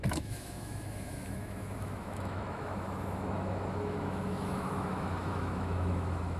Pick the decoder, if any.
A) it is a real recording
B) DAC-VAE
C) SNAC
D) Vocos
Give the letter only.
B